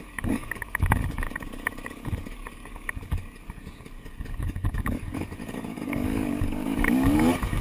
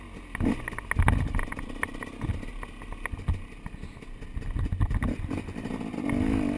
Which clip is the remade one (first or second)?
first